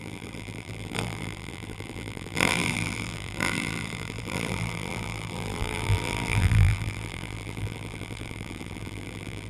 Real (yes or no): no